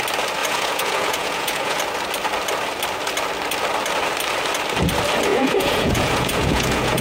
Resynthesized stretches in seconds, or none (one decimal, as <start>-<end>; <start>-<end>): 0.4-1.8; 5.3-7.0